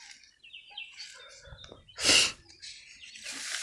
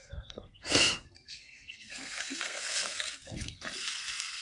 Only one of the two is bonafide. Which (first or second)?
first